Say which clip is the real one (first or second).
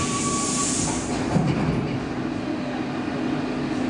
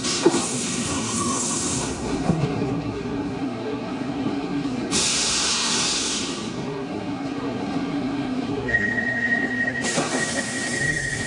first